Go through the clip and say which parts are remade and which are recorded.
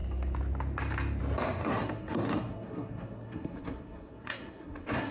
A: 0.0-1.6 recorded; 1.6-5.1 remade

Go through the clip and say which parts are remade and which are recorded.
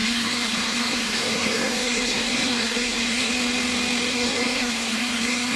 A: 0.0-3.3 remade; 3.3-4.1 recorded; 4.1-5.6 remade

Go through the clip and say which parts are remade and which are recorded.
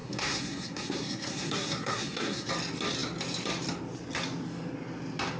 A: 0.0-2.5 remade; 2.5-5.4 recorded